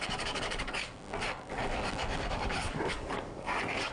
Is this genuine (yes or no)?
no